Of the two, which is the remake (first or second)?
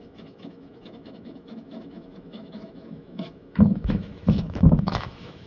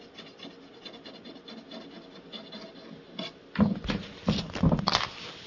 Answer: first